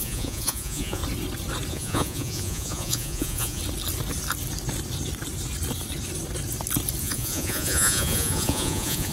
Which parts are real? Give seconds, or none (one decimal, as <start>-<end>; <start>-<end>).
1.0-1.7; 3.6-7.0